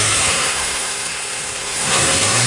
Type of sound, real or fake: fake